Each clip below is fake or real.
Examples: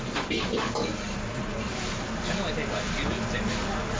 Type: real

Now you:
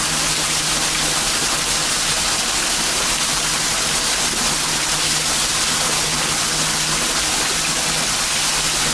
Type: real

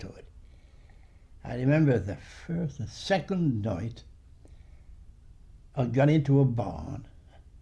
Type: real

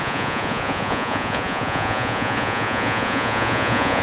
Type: fake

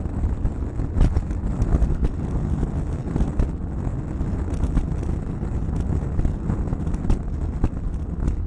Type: real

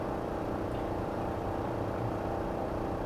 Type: real